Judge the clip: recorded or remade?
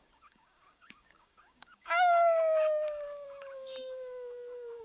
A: remade